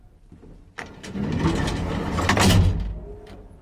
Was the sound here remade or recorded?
recorded